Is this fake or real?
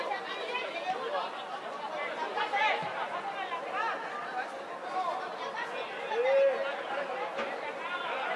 real